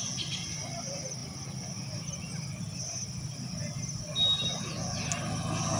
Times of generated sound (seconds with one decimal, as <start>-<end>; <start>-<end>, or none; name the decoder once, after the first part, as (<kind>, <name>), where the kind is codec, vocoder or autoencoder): none